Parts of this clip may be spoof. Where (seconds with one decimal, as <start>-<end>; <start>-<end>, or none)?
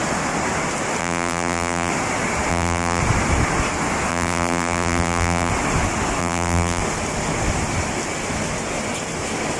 1.0-1.9; 2.5-3.0; 4.1-5.5; 6.2-6.8